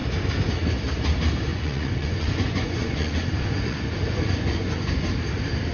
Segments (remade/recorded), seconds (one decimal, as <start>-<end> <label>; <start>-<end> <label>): 0.0-1.5 recorded; 1.5-4.9 remade; 4.9-5.7 recorded